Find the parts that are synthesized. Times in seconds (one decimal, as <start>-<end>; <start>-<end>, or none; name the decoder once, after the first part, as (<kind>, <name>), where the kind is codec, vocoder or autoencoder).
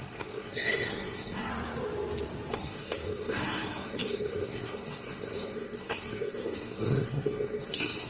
0.0-1.5 (codec, SNAC); 2.5-8.1